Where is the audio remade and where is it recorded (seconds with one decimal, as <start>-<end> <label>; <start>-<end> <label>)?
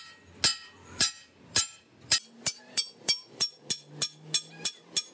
0.0-0.5 recorded; 0.5-3.6 remade; 3.6-5.1 recorded